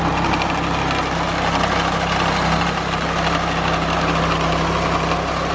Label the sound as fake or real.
real